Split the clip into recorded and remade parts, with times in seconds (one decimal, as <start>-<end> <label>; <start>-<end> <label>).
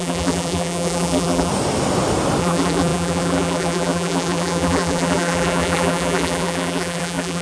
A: 0.0-1.5 remade; 1.5-2.4 recorded; 2.4-7.4 remade